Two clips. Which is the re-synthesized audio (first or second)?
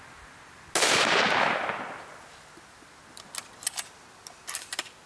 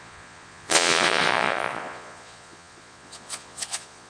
second